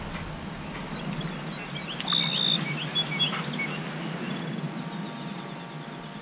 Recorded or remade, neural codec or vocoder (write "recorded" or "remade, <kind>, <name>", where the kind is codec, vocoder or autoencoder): recorded